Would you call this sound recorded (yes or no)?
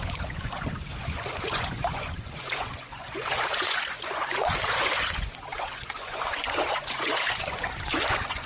no